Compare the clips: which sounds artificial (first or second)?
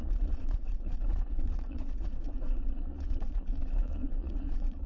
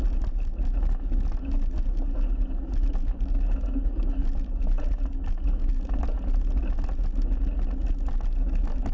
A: first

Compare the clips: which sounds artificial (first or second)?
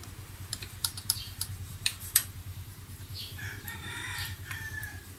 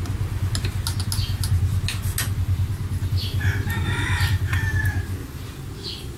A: first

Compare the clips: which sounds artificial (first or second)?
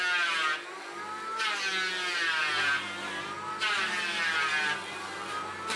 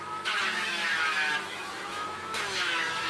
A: second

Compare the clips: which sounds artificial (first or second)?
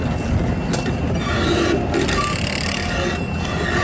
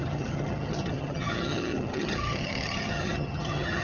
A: second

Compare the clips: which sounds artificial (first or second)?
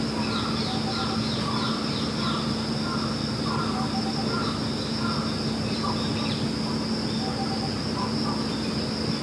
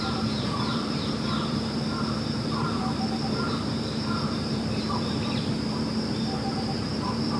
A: second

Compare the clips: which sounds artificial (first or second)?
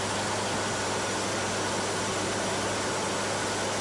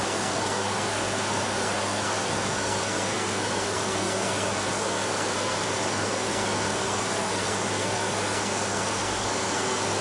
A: second